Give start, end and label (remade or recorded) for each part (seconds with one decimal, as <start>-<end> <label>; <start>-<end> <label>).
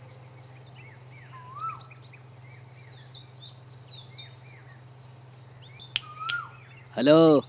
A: 0.0-7.5 recorded